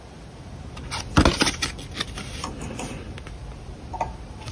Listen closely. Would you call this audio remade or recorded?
recorded